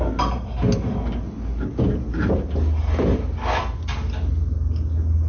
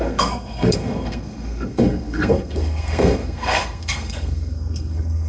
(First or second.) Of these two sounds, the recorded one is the first